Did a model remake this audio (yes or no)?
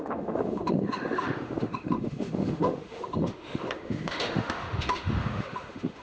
yes